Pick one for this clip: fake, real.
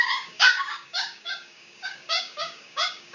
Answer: fake